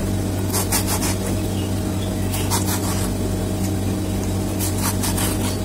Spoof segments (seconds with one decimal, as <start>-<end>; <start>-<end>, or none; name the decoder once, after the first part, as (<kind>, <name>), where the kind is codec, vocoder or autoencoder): none